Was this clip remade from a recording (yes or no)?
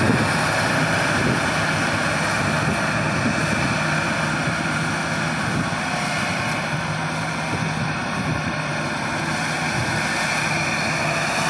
no